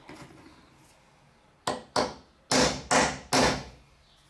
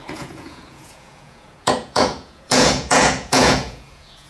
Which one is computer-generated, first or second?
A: second